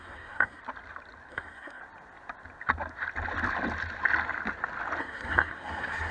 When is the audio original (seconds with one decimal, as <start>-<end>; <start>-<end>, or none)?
0.6-1.3; 1.8-5.0